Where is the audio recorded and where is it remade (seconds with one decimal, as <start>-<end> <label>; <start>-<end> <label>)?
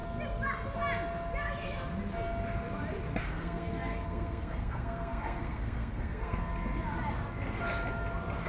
0.0-3.2 recorded; 3.2-6.4 remade; 6.4-8.5 recorded